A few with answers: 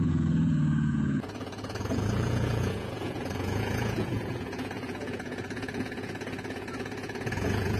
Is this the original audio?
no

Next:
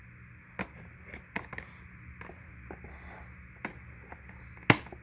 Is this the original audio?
yes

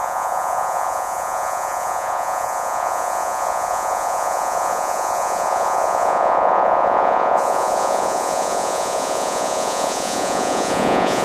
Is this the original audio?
no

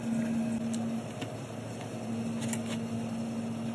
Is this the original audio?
yes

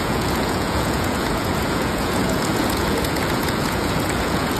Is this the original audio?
no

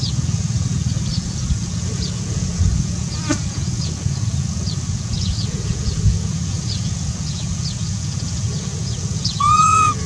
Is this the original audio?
no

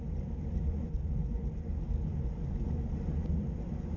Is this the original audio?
yes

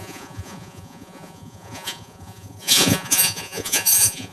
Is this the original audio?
no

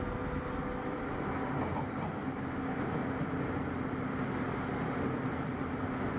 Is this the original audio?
yes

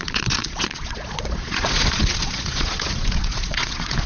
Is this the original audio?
no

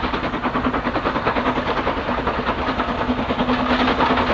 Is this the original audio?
yes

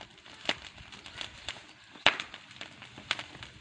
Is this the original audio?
yes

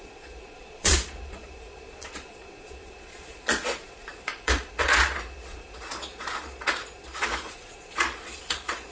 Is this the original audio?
no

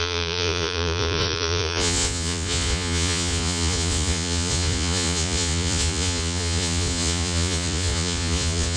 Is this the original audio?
no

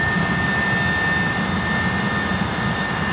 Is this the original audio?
yes